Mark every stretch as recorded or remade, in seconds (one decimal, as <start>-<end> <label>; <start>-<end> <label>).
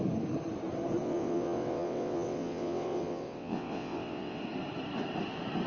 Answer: 0.0-1.0 recorded; 1.0-4.4 remade; 4.4-5.7 recorded